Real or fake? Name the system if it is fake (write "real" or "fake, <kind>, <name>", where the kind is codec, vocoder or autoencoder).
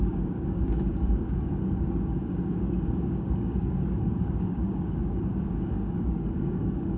fake, codec, DAC